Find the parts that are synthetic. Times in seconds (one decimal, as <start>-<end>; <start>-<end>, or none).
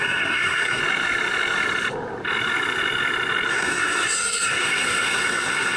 0.0-0.8; 3.5-5.8